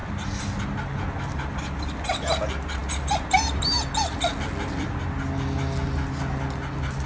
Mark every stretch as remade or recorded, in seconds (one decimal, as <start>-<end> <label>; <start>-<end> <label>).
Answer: 0.0-7.1 recorded